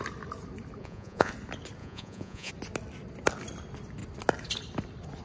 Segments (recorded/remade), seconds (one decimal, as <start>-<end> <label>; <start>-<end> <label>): 0.0-0.8 recorded; 0.8-1.3 remade; 1.3-1.8 recorded; 1.8-2.5 remade; 2.5-5.2 recorded